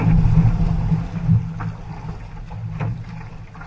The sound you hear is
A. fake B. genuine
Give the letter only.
B